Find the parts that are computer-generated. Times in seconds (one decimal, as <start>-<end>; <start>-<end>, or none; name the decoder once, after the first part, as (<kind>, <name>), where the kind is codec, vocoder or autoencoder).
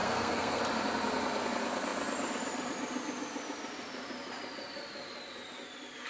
0.0-0.6 (codec, SNAC)